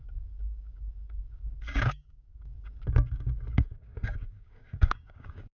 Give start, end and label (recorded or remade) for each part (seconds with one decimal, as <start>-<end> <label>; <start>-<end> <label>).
0.0-5.5 remade